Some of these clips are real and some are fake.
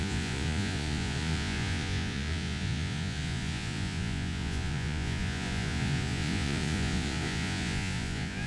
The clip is fake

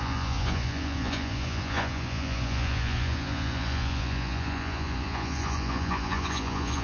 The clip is fake